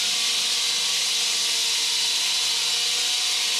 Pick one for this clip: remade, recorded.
recorded